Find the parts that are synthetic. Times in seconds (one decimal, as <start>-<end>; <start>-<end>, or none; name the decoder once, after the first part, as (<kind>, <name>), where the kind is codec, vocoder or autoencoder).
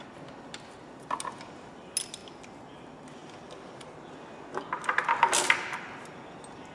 none